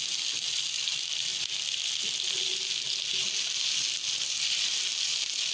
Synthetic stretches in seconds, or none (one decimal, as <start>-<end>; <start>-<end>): none